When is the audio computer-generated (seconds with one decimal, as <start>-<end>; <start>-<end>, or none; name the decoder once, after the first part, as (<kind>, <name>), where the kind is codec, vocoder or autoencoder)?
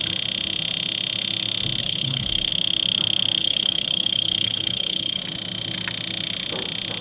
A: 1.8-2.5 (codec, HILCodec); 3.4-5.2